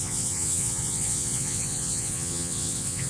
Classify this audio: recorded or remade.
remade